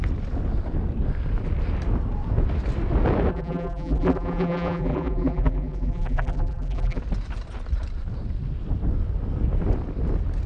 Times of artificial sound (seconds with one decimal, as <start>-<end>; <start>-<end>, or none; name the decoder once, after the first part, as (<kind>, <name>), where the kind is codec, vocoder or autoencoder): 3.3-7.0 (vocoder, BigVGAN v2)